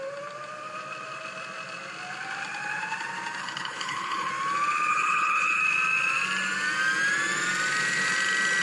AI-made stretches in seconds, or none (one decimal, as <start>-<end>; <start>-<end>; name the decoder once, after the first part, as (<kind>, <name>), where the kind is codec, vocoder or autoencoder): 3.4-4.3 (codec, HILCodec); 4.9-5.6